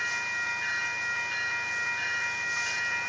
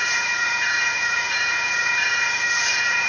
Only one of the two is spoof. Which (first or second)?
second